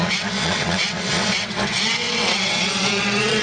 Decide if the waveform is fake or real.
fake